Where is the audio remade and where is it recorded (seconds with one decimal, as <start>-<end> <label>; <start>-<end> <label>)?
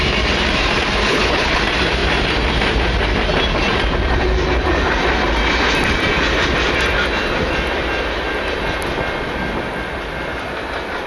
0.0-1.1 recorded; 1.1-1.6 remade; 1.6-11.1 recorded